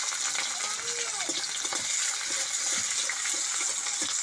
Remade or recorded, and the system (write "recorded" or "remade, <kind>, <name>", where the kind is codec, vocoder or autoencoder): recorded